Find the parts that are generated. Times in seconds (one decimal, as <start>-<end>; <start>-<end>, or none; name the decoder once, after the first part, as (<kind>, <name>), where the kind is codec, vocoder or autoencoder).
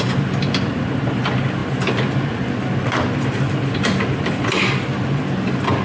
none